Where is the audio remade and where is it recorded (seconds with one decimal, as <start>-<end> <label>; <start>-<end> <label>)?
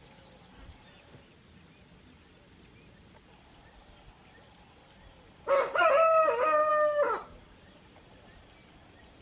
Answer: 0.0-9.2 recorded